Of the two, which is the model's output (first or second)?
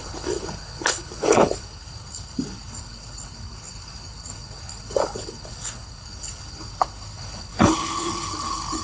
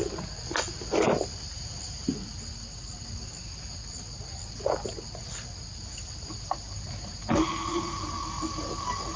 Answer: first